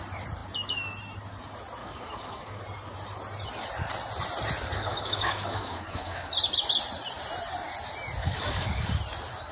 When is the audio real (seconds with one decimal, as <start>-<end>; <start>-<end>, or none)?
0.0-1.8; 2.6-4.8; 6.3-8.2; 8.9-9.5